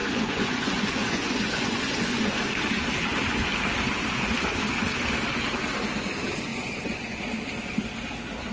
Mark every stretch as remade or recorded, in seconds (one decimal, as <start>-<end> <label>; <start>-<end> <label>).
0.0-2.4 remade; 2.4-6.5 recorded; 6.5-7.2 remade; 7.2-8.5 recorded